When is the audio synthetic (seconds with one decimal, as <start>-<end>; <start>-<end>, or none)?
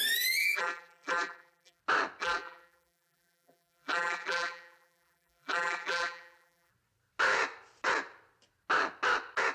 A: 0.4-1.8; 2.2-6.7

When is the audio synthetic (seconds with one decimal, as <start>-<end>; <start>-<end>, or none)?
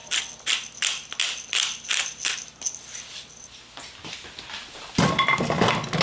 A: none